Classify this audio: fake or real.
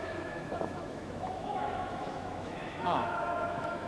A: fake